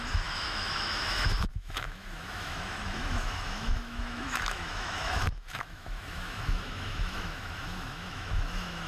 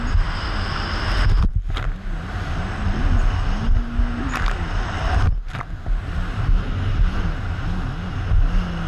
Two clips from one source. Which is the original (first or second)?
second